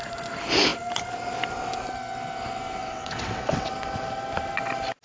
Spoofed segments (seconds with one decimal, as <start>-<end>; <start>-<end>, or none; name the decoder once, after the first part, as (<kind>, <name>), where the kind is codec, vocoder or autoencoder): 2.8-3.7 (vocoder, WaveNeXt)